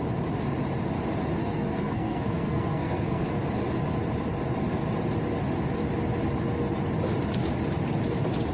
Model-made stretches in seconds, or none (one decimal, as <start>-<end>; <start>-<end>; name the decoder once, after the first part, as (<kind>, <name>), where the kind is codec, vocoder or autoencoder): 1.4-3.4 (codec, SNAC)